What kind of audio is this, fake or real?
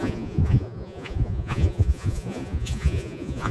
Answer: fake